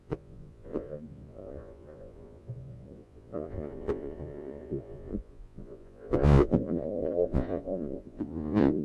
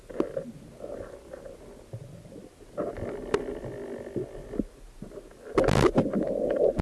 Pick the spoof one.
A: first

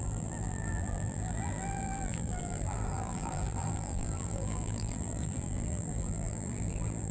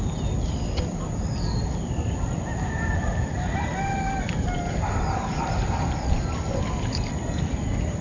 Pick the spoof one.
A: first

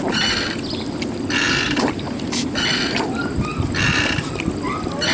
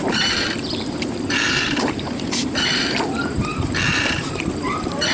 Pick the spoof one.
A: second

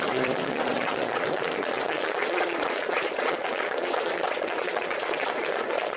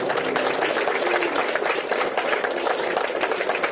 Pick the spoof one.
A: first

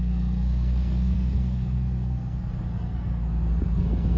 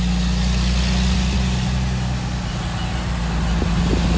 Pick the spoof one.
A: first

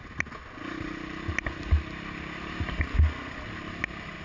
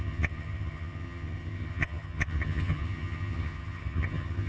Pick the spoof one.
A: second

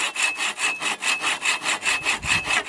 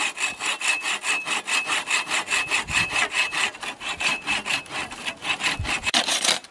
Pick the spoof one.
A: second